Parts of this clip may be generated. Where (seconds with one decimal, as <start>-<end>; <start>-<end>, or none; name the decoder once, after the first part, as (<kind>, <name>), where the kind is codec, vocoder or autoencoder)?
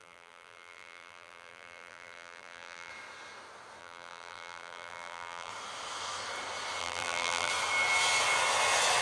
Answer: 0.0-2.9 (vocoder, BigVGAN v2); 3.8-5.5; 6.8-7.5